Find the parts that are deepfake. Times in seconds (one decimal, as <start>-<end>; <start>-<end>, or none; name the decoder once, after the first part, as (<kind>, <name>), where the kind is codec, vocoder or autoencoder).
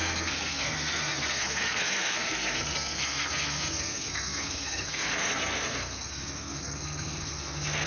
0.0-7.9 (codec, SNAC)